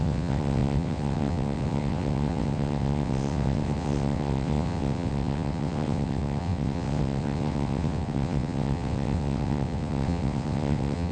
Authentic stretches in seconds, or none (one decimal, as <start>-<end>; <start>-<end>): none